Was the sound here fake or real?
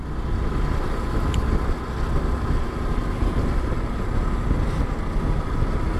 real